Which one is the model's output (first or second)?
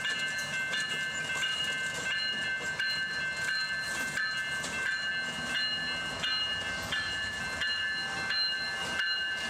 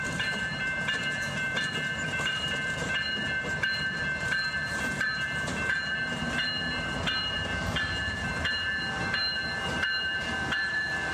second